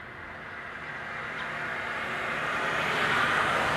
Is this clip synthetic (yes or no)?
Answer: no